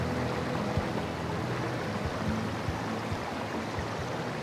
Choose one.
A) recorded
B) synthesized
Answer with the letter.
A